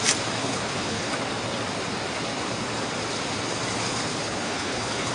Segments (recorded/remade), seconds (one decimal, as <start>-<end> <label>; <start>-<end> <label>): 0.0-0.4 recorded; 0.4-1.1 remade; 1.1-4.1 recorded; 4.1-5.1 remade

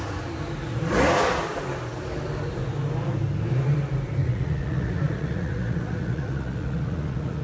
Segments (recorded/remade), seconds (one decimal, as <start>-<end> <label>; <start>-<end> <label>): 0.0-4.2 recorded; 4.2-7.4 remade

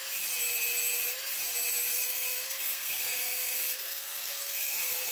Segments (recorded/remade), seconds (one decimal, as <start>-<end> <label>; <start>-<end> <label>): 0.0-1.9 recorded; 1.9-5.1 remade

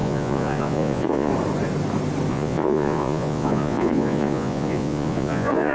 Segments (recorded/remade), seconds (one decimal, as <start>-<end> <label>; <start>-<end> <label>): 0.0-1.3 remade; 1.3-2.3 recorded; 2.3-5.7 remade

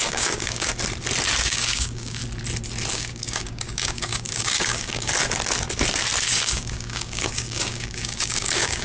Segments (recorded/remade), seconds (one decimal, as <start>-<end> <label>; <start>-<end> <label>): 0.0-0.7 remade; 0.7-1.4 recorded; 1.4-2.2 remade; 2.2-2.9 recorded; 2.9-5.1 remade; 5.1-6.2 recorded; 6.2-8.8 remade